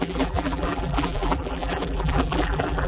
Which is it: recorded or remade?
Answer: remade